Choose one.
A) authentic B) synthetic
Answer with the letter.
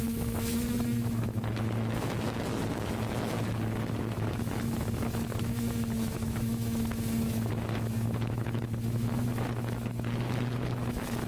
B